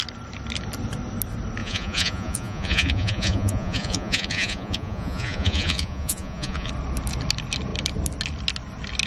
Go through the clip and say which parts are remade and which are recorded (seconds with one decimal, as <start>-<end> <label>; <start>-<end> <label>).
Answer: 0.0-1.6 recorded; 1.6-6.7 remade; 6.7-9.1 recorded